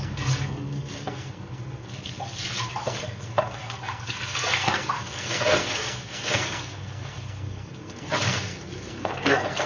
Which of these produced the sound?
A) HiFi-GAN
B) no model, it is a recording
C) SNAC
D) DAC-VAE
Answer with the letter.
C